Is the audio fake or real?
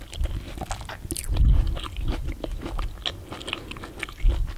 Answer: real